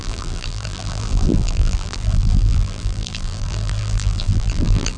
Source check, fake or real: fake